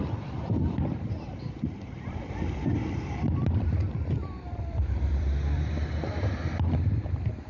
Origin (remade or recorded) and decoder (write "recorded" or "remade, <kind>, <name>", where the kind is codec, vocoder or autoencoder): remade, vocoder, BigVGAN v2